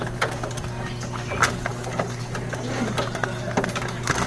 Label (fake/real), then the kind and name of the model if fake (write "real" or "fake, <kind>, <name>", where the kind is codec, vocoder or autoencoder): real